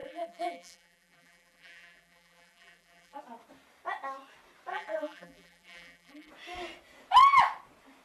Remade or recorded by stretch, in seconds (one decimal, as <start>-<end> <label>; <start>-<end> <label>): 0.0-3.2 remade; 3.2-4.7 recorded; 4.7-6.3 remade; 6.3-8.0 recorded